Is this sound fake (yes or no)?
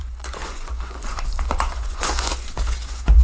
yes